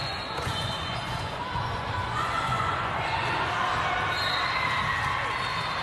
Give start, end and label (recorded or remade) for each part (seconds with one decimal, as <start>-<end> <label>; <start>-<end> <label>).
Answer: 0.0-3.5 remade; 3.5-5.8 recorded

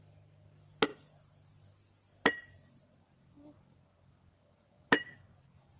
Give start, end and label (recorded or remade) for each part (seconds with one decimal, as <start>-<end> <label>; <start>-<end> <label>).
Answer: 0.0-5.8 recorded

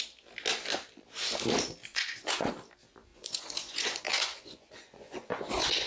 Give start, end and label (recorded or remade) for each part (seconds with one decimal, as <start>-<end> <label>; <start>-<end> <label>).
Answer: 0.0-1.9 recorded; 1.9-2.5 remade; 2.5-3.1 recorded; 3.1-5.9 remade

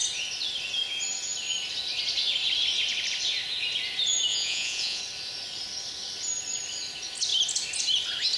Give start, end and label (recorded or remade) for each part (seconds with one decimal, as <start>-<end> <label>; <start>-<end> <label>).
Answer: 0.0-4.3 recorded; 4.3-5.0 remade; 5.0-8.4 recorded

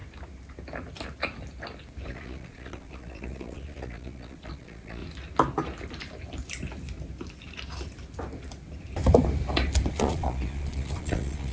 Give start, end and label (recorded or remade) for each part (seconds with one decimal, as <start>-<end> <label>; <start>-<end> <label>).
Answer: 0.0-2.1 recorded; 2.1-5.0 remade; 5.0-9.9 recorded; 9.9-11.5 remade